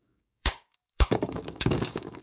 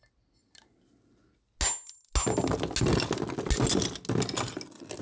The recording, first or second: second